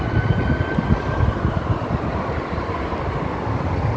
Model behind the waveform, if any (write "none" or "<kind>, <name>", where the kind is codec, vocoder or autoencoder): none